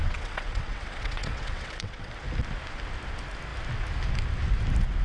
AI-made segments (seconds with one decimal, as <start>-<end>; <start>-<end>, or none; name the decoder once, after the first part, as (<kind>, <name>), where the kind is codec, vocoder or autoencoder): 0.0-2.1 (vocoder, WaveNeXt)